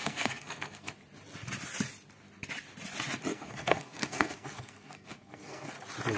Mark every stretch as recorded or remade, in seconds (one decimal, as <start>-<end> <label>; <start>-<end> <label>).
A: 0.0-0.9 remade; 0.9-3.3 recorded; 3.3-5.7 remade; 5.7-6.2 recorded